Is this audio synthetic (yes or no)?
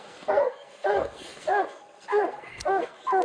yes